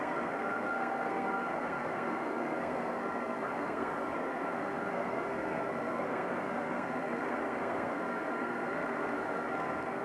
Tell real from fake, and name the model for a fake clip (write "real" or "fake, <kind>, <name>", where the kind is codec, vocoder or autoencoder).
fake, codec, SNAC